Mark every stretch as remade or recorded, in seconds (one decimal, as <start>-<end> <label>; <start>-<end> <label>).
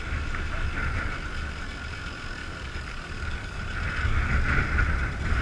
0.0-2.4 recorded; 2.4-3.6 remade; 3.6-5.4 recorded